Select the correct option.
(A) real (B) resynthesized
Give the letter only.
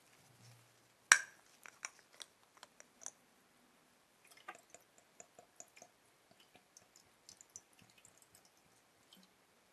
A